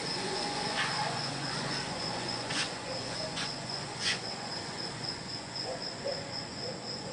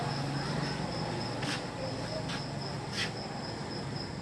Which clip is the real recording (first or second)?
second